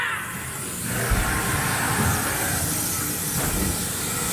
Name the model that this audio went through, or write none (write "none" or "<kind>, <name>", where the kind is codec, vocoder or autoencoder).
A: none